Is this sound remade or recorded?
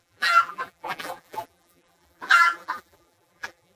remade